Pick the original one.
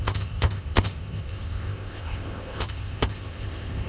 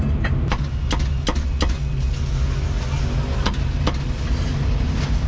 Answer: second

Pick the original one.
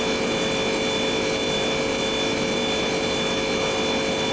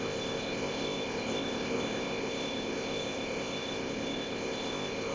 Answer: first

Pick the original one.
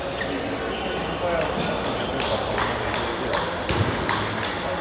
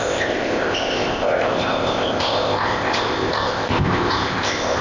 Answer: first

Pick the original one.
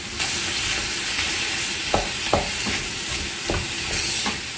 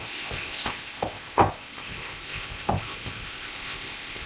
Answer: first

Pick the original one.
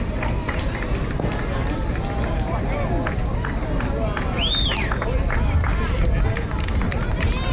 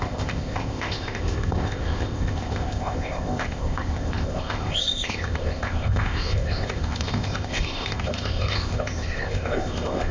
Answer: first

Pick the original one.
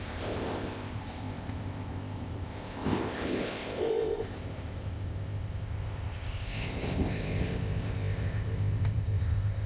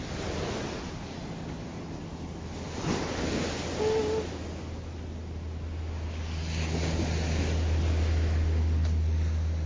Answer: second